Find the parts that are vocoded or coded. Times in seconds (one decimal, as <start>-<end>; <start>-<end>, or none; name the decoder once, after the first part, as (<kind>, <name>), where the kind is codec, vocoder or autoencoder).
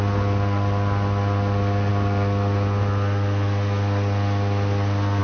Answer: none